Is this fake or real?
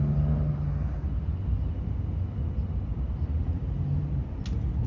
real